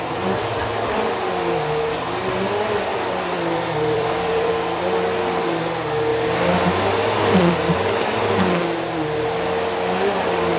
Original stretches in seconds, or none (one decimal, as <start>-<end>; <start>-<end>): 0.0-2.9; 4.5-10.6